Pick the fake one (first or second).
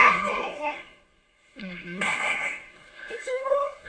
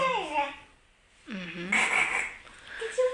first